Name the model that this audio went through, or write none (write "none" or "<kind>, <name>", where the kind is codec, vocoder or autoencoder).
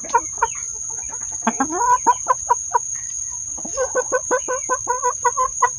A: none